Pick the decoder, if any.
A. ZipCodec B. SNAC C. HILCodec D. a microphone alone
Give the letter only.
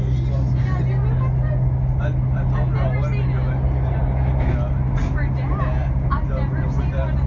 D